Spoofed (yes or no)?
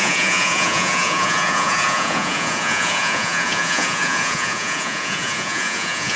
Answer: yes